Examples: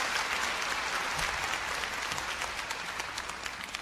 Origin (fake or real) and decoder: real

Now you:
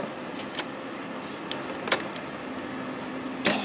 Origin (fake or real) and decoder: real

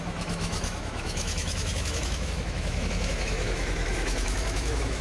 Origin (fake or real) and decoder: fake, autoencoder, DAC-VAE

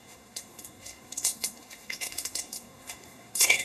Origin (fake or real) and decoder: fake, codec, SNAC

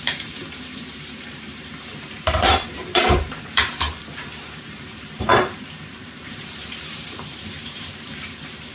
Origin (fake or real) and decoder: fake, vocoder, BigVGAN v2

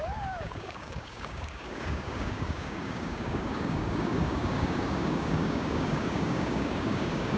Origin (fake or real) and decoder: fake, codec, DAC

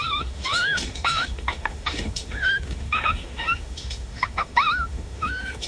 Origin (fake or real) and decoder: fake, autoencoder, DAC-VAE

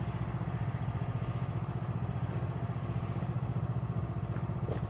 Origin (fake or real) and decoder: real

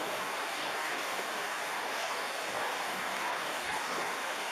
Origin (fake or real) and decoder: fake, codec, DAC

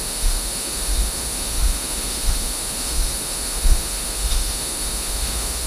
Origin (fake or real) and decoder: fake, autoencoder, DAC-VAE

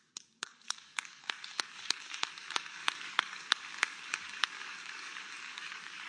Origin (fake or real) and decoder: fake, codec, DAC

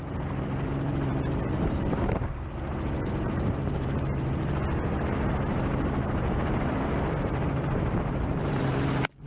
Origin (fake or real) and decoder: fake, vocoder, BigVGAN v2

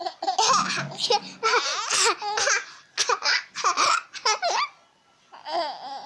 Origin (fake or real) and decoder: real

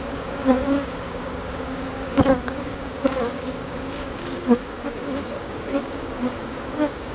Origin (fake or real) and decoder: fake, codec, DAC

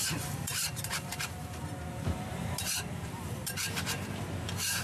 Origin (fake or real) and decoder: fake, vocoder, BigVGAN v2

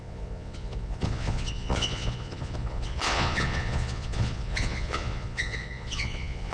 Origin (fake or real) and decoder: fake, vocoder, Vocos